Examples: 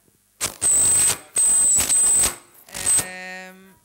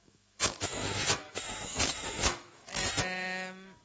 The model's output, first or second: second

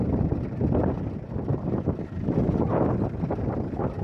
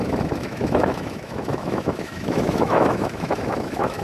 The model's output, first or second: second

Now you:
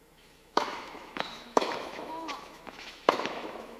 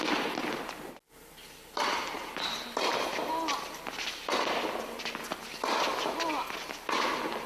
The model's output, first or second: first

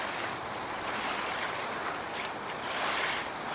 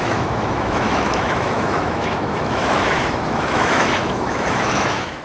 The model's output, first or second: second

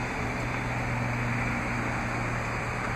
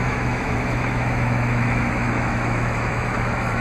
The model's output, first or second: second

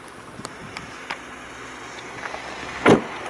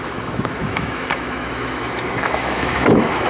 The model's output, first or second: second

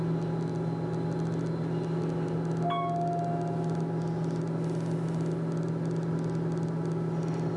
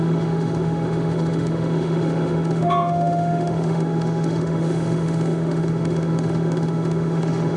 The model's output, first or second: second